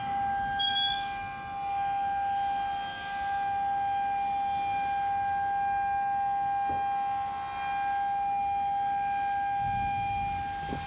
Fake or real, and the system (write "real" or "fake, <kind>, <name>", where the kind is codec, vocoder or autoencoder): real